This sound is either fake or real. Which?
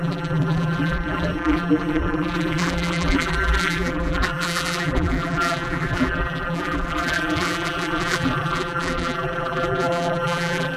fake